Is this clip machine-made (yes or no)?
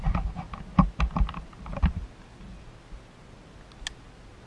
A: no